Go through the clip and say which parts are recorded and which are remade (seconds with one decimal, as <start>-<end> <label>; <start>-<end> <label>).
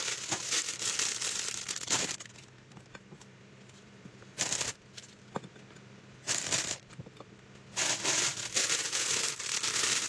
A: 0.0-8.6 recorded; 8.6-9.1 remade; 9.1-10.1 recorded